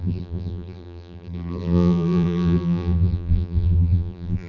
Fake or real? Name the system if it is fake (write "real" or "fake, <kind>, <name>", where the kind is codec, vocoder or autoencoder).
fake, vocoder, BigVGAN v2